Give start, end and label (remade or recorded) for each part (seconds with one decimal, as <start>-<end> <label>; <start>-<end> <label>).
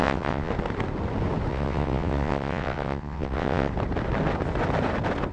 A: 0.0-0.5 remade; 0.5-1.5 recorded; 1.5-3.7 remade; 3.7-5.3 recorded